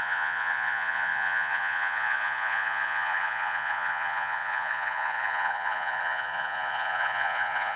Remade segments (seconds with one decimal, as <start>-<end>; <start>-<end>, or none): 0.0-7.8

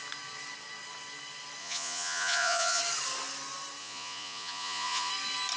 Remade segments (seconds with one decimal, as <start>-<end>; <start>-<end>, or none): 1.6-2.8; 3.8-5.1

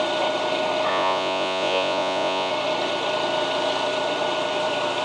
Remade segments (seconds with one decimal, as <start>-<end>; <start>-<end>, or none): 0.9-2.5